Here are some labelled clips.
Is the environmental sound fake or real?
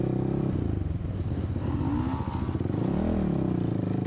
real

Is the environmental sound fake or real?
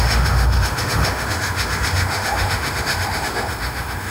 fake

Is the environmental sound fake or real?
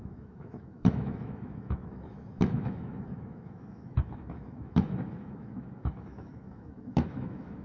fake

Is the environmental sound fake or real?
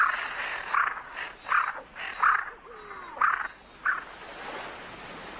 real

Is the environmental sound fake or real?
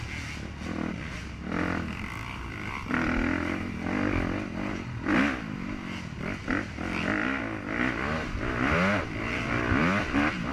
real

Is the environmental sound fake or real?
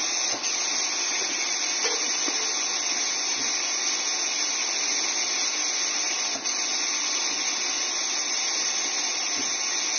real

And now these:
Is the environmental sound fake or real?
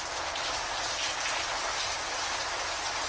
real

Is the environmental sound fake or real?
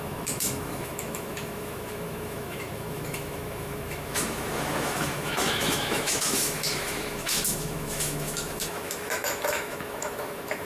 fake